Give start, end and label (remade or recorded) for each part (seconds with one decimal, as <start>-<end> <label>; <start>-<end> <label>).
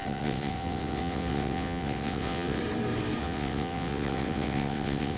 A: 0.0-2.6 remade; 2.6-3.2 recorded; 3.2-5.2 remade